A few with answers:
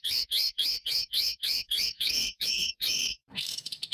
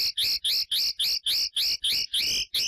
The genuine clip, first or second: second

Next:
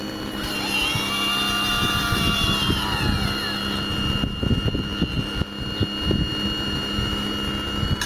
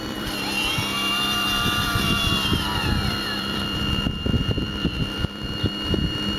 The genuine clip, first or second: first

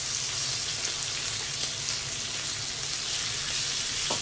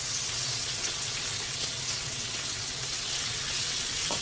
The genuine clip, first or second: first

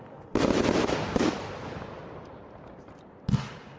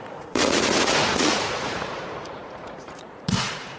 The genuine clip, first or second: first